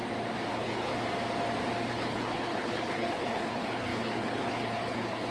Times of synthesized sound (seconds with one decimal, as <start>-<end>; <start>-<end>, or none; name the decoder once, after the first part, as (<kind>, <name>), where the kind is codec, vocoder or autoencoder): 0.5-0.9 (codec, HILCodec); 1.9-5.3

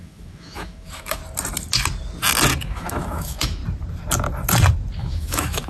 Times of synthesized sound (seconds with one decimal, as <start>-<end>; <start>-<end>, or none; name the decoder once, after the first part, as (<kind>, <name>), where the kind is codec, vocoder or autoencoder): 0.0-1.2 (autoencoder, DAC-VAE); 2.6-3.6; 5.0-5.7

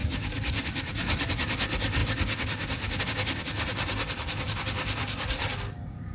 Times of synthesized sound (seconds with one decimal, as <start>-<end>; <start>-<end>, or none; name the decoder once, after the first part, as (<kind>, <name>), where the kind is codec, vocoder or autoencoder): none

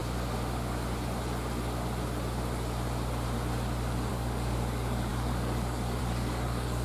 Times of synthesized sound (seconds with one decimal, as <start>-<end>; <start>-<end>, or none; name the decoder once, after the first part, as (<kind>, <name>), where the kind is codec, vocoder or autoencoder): 4.1-6.8 (codec, DAC)